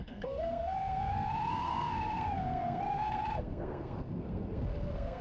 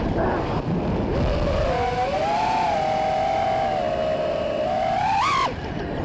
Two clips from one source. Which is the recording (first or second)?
second